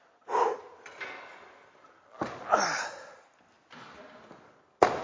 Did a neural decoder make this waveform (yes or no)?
no